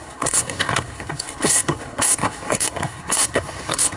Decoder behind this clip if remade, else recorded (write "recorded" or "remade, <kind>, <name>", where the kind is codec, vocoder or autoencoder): remade, codec, SNAC